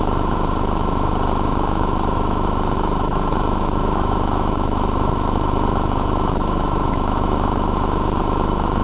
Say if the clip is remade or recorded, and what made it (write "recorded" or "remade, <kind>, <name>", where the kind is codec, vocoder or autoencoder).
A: remade, autoencoder, DAC-VAE